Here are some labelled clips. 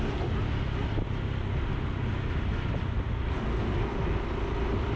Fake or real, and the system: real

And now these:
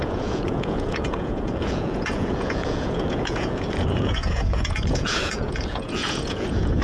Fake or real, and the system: fake, vocoder, Vocos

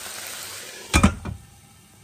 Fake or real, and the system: real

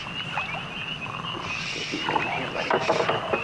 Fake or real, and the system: real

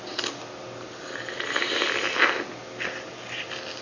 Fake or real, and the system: real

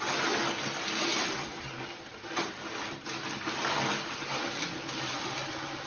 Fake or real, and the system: real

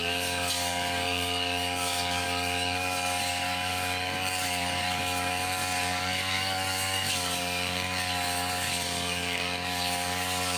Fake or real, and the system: fake, codec, DAC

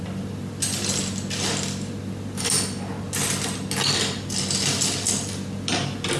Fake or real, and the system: real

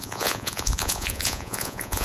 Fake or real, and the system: fake, vocoder, Vocos